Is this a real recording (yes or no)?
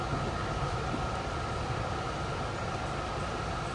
yes